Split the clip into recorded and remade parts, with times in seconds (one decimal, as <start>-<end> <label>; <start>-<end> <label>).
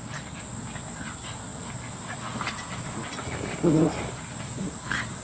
0.0-5.2 recorded